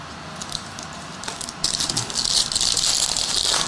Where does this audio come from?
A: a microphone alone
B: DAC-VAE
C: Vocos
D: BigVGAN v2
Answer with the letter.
A